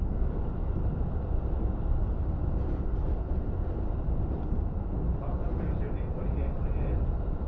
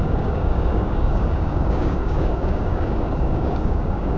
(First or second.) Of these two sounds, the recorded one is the first